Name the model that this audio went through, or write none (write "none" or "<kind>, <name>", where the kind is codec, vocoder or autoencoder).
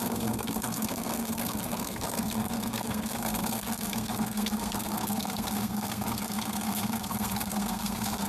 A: codec, SNAC